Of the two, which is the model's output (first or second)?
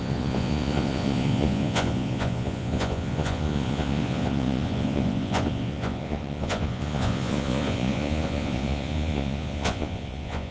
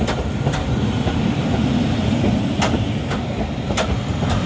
first